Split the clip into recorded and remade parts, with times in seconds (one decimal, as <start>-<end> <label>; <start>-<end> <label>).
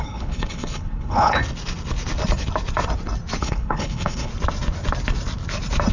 0.0-1.4 remade; 1.4-3.4 recorded; 3.4-4.3 remade; 4.3-5.9 recorded